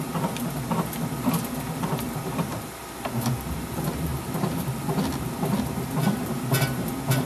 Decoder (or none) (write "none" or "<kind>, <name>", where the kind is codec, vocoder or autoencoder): none